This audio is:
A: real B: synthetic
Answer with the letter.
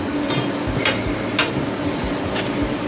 A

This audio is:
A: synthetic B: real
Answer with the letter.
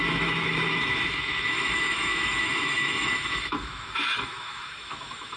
A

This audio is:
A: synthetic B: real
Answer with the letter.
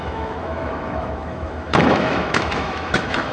A